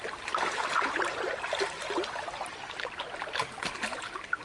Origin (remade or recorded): recorded